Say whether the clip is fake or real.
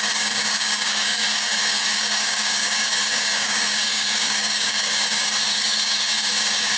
fake